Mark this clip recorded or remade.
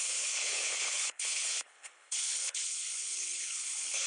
remade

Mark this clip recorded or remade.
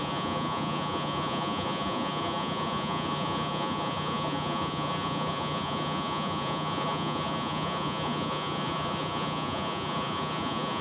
remade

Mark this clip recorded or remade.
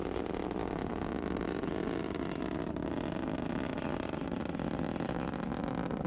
recorded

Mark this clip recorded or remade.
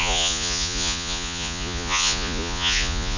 remade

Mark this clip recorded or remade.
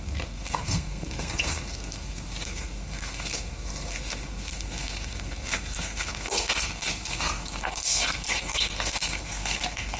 remade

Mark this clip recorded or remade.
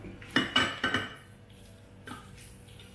recorded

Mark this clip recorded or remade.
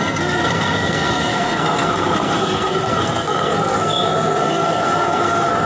remade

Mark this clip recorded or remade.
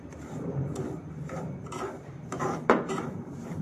remade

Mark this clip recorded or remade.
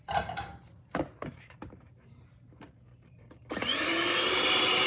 remade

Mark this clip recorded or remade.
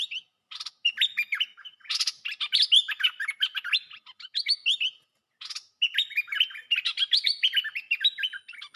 recorded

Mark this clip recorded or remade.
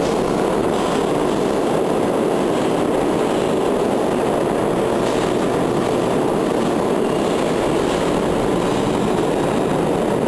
recorded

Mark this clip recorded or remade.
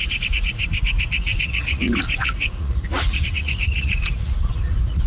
remade